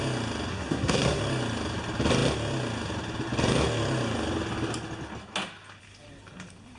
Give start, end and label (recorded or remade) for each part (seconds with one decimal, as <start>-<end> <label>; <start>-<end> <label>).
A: 0.0-0.5 recorded; 0.5-1.2 remade; 1.2-6.8 recorded